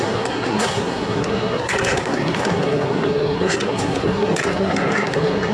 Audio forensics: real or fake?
fake